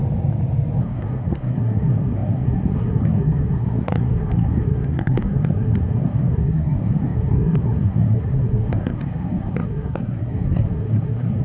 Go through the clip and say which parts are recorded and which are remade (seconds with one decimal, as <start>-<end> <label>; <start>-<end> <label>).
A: 0.0-0.8 recorded; 0.8-11.4 remade